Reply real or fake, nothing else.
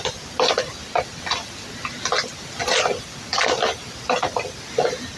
real